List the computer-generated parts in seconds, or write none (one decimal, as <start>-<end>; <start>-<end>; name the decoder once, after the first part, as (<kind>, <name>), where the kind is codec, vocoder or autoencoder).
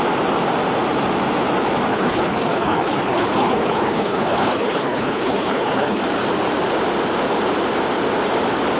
1.9-6.0 (codec, HILCodec)